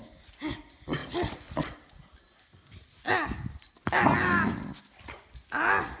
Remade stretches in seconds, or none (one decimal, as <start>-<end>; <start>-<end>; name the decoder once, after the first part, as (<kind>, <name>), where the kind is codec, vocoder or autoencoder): none